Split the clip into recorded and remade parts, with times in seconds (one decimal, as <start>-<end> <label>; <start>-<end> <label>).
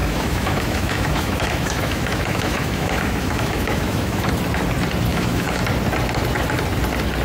0.0-4.3 remade; 4.3-5.1 recorded; 5.1-5.6 remade; 5.6-7.2 recorded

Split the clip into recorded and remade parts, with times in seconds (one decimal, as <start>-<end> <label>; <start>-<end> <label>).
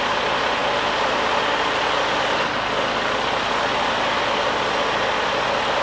0.0-5.8 recorded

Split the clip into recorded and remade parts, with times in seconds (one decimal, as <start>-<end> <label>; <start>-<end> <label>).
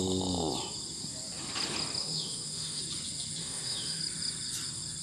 0.0-2.0 recorded; 2.0-2.8 remade; 2.8-3.4 recorded; 3.4-4.0 remade; 4.0-5.0 recorded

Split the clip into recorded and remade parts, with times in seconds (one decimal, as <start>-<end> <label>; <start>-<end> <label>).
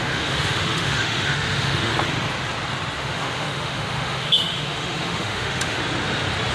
0.0-1.9 remade; 1.9-3.0 recorded; 3.0-5.8 remade; 5.8-6.5 recorded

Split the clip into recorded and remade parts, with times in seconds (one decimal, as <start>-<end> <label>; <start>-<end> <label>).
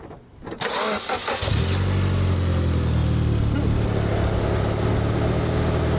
0.0-6.0 recorded